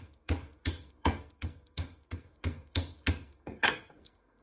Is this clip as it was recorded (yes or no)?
no